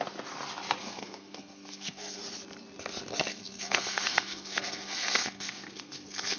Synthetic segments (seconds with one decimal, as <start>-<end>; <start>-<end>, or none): 0.8-2.2; 3.3-6.4